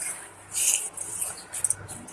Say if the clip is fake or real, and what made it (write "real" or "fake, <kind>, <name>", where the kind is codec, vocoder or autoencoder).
real